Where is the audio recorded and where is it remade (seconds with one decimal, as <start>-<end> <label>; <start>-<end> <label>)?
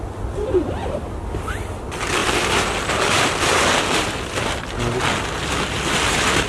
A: 0.0-6.5 recorded